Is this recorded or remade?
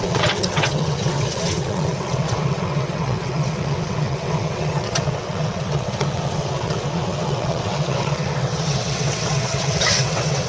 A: remade